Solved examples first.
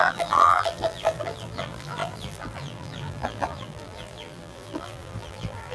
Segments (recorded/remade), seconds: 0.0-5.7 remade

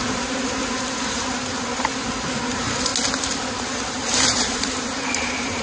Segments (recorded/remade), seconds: 0.0-1.9 remade; 1.9-2.5 recorded; 2.5-2.9 remade; 2.9-3.9 recorded; 3.9-5.6 remade

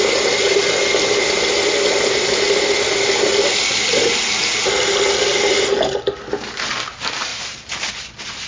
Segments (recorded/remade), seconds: 0.0-7.3 recorded; 7.3-7.9 remade; 7.9-8.5 recorded

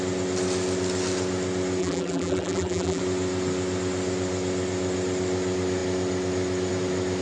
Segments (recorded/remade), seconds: 0.0-1.8 recorded; 1.8-3.0 remade; 3.0-7.2 recorded

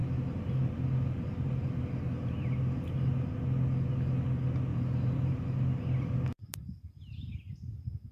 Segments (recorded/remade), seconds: 0.0-4.7 recorded; 4.7-5.3 remade; 5.3-8.1 recorded

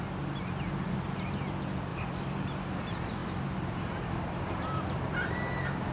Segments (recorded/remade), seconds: 0.0-1.9 recorded; 1.9-2.7 remade; 2.7-3.2 recorded; 3.2-5.3 remade; 5.3-5.9 recorded

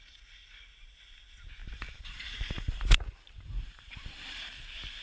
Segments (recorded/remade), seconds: 0.0-1.6 recorded; 1.6-4.6 remade; 4.6-5.0 recorded

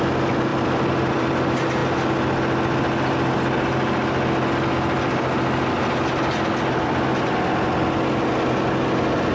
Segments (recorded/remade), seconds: 0.0-0.5 recorded; 0.5-1.3 remade; 1.3-9.3 recorded